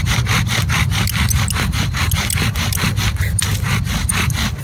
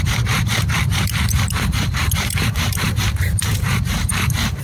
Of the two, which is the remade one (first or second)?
second